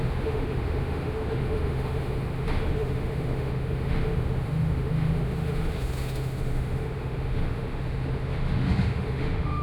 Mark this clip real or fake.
fake